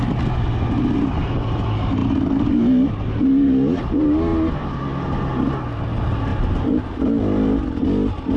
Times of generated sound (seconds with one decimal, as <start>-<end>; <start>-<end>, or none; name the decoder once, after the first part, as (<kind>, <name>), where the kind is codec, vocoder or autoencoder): 6.3-6.9 (vocoder, BigVGAN v2)